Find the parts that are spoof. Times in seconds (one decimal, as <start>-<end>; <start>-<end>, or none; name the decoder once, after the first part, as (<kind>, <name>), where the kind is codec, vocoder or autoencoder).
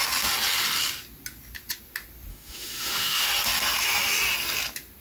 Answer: 2.3-3.3 (autoencoder, DAC-VAE)